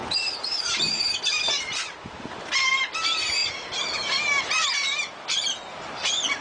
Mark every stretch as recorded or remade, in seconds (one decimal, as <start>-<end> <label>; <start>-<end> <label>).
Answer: 0.0-2.8 remade; 2.8-6.4 recorded